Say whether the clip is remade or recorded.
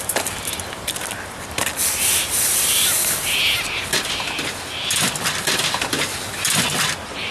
remade